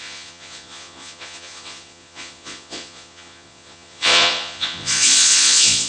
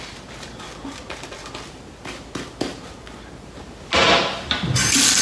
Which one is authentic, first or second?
second